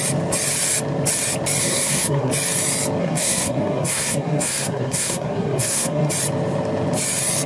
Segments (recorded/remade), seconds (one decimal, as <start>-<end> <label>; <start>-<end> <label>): 0.0-1.6 recorded; 1.6-2.3 remade; 2.3-3.0 recorded; 3.0-6.1 remade; 6.1-7.5 recorded